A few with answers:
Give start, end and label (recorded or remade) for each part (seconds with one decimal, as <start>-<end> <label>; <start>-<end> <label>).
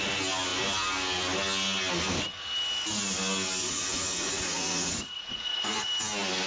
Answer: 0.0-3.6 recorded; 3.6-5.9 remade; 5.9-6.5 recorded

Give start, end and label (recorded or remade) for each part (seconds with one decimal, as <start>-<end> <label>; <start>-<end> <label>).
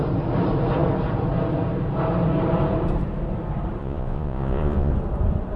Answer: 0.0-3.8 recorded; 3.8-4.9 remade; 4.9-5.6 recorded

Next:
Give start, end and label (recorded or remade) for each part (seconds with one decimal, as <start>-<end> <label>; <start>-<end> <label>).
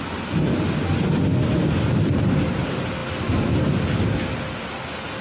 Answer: 0.0-5.2 recorded